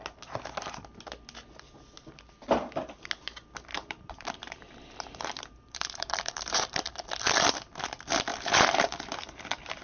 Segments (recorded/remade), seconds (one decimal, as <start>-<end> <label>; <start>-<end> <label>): 0.0-3.7 recorded; 3.7-6.9 remade; 6.9-8.3 recorded; 8.3-9.3 remade; 9.3-9.8 recorded